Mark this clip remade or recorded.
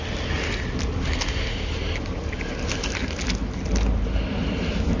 recorded